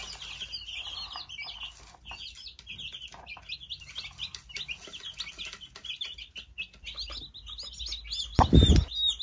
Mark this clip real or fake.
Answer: real